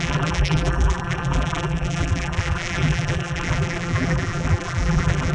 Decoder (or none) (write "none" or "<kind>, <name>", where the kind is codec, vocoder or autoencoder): vocoder, BigVGAN v2